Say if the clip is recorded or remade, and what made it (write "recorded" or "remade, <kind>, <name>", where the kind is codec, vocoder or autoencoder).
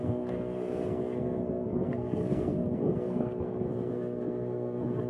remade, codec, SNAC